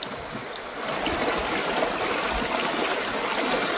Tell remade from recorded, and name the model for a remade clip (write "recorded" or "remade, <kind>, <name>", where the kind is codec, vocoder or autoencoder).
recorded